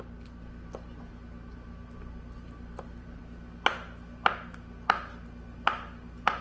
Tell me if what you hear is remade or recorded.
recorded